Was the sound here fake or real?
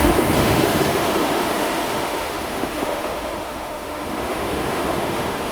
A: fake